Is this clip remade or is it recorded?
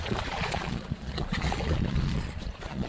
remade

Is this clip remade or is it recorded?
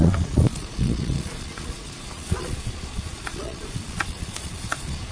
remade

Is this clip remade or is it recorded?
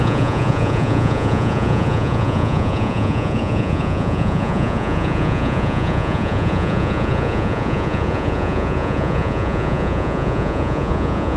remade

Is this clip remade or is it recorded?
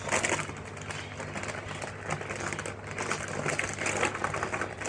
recorded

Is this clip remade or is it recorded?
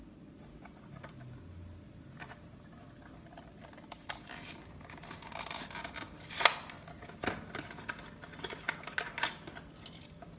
recorded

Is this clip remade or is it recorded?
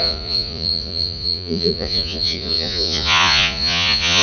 remade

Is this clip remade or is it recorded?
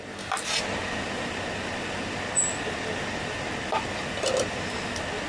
recorded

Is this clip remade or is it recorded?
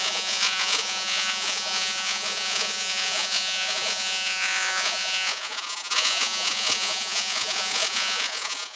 remade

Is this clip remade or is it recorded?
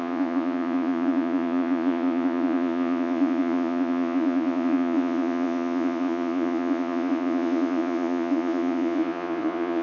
remade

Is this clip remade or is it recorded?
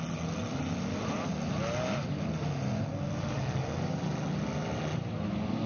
recorded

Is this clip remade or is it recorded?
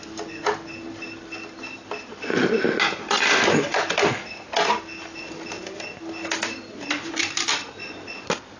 recorded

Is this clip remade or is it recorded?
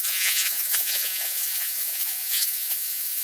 remade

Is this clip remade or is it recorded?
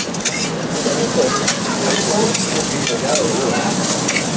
remade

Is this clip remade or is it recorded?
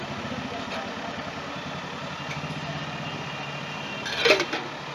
recorded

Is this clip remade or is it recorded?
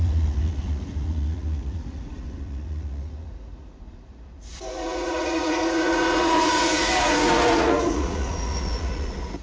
remade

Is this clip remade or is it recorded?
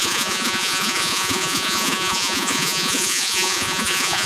remade